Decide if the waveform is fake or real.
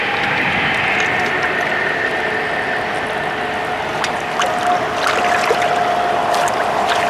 real